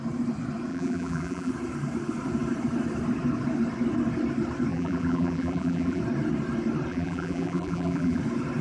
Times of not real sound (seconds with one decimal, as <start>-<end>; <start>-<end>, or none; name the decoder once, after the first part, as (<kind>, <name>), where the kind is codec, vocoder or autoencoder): 0.7-1.5 (vocoder, BigVGAN v2); 4.7-6.0; 6.9-8.2